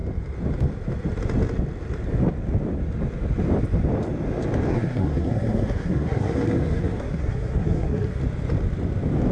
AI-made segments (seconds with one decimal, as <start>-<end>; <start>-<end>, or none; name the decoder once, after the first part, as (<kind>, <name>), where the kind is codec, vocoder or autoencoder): 4.7-8.2 (codec, SNAC)